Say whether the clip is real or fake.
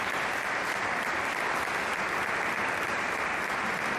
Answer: fake